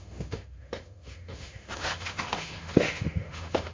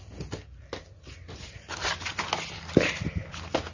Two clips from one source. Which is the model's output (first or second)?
first